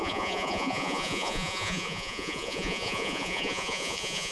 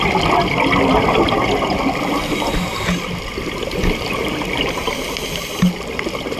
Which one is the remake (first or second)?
first